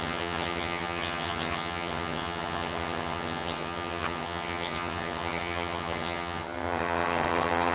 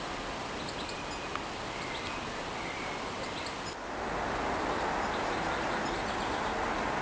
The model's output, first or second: first